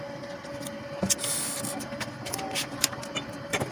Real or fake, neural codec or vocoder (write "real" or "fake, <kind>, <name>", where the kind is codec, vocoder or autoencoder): real